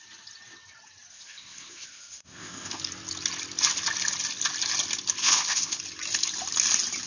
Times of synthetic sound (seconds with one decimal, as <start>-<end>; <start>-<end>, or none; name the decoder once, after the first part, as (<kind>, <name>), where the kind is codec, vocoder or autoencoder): 1.1-2.8 (codec, ZipCodec); 5.2-5.8